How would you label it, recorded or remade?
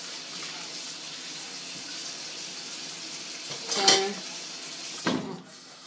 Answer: recorded